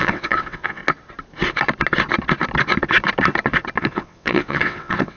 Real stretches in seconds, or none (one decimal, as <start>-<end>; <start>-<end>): 0.8-3.8